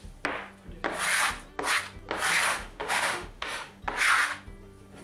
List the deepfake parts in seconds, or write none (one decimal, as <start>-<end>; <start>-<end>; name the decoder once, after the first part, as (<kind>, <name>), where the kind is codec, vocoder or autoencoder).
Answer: 2.5-3.8 (autoencoder, DAC-VAE)